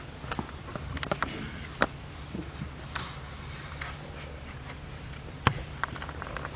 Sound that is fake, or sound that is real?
real